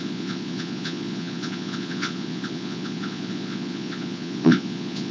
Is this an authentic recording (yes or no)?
no